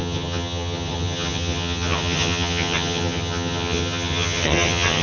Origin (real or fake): fake